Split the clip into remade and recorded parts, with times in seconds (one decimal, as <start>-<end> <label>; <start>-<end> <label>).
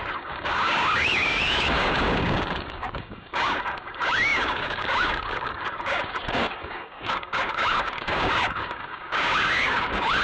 0.0-10.2 remade